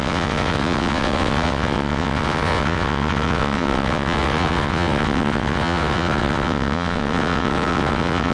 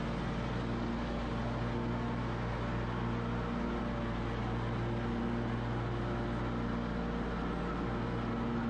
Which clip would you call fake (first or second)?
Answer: first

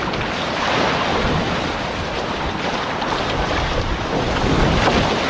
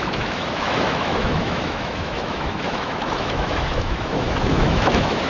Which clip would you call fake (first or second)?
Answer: second